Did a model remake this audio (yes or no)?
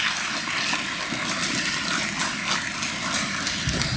no